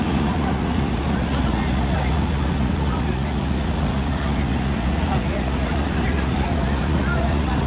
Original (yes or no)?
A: no